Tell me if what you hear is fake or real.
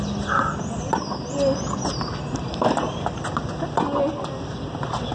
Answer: fake